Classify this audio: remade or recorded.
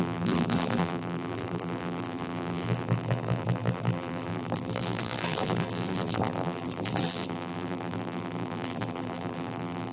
remade